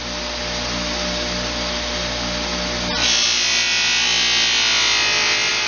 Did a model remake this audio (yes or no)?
no